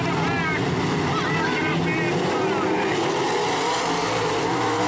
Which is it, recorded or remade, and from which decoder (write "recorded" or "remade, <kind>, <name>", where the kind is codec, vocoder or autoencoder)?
recorded